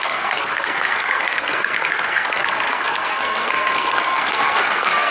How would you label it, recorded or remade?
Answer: remade